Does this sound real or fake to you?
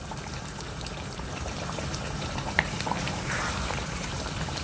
fake